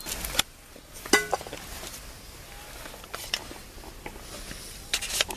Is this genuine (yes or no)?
yes